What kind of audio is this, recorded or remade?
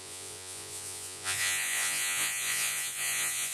remade